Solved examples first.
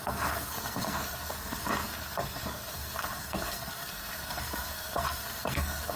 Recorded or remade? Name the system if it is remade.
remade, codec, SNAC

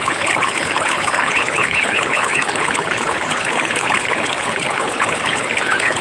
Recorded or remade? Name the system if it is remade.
remade, codec, HILCodec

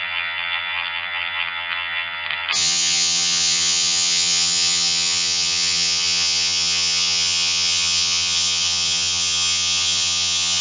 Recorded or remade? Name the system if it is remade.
remade, vocoder, HiFi-GAN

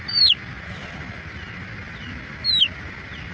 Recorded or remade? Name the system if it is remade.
remade, vocoder, BigVGAN v2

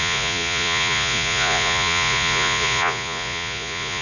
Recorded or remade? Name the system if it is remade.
remade, vocoder, Vocos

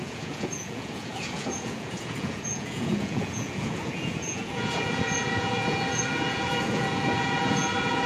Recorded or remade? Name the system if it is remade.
remade, vocoder, Vocos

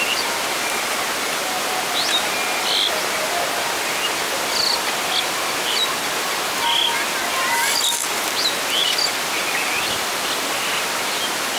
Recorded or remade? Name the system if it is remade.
recorded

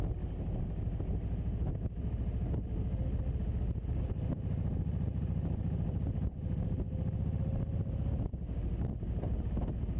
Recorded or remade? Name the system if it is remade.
recorded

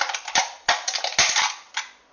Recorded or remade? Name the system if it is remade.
recorded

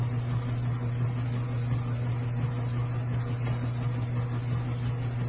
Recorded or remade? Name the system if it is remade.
recorded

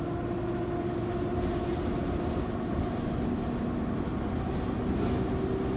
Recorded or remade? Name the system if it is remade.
recorded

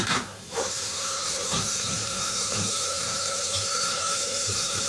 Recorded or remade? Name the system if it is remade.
remade, codec, SNAC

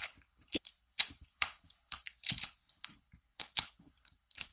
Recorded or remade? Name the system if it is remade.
remade, codec, HILCodec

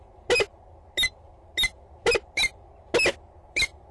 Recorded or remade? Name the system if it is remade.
recorded